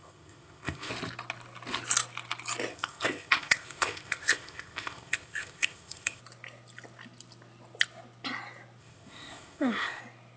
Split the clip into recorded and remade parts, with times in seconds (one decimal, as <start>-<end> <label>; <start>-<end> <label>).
0.0-0.9 remade; 0.9-2.7 recorded; 2.7-6.2 remade; 6.2-8.8 recorded; 8.8-10.0 remade; 10.0-10.4 recorded

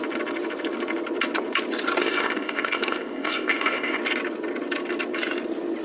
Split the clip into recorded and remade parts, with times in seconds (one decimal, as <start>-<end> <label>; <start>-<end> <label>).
0.0-2.0 recorded; 2.0-4.0 remade; 4.0-5.8 recorded

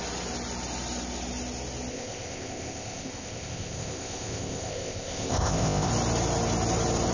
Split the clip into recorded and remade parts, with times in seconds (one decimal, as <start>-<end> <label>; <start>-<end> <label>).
0.0-1.9 recorded; 1.9-5.9 remade; 5.9-7.1 recorded

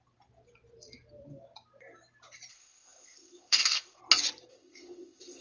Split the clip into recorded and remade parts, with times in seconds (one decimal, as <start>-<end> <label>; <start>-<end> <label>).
0.0-2.5 recorded; 2.5-4.0 remade; 4.0-4.5 recorded; 4.5-5.4 remade

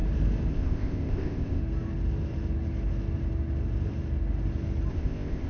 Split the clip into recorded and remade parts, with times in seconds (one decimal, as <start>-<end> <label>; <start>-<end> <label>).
0.0-0.5 recorded; 0.5-1.6 remade; 1.6-4.9 recorded; 4.9-5.5 remade

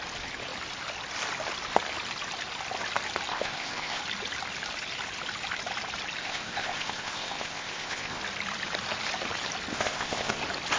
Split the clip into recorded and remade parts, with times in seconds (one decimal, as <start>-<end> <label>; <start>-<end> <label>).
0.0-3.3 recorded; 3.3-4.0 remade; 4.0-6.2 recorded; 6.2-8.2 remade; 8.2-9.7 recorded; 9.7-10.4 remade; 10.4-10.8 recorded

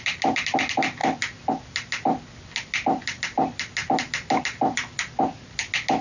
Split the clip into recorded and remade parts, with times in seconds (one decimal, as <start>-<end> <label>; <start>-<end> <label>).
0.0-6.0 recorded